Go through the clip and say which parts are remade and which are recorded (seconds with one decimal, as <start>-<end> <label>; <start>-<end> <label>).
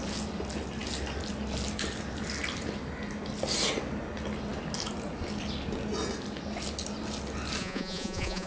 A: 0.0-7.6 recorded; 7.6-8.5 remade